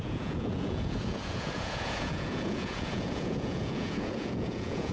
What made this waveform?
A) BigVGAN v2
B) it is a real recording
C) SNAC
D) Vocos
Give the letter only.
D